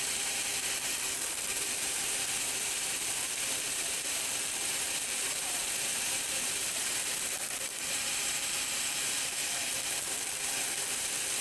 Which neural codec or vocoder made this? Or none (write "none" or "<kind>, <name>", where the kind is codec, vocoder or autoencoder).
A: vocoder, BigVGAN v2